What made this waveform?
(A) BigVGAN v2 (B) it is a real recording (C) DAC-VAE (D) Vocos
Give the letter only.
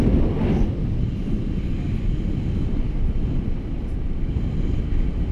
B